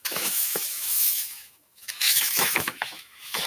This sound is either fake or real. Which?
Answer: fake